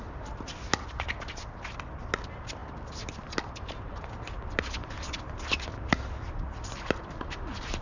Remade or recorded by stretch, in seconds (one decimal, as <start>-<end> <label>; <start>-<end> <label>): 0.0-7.8 recorded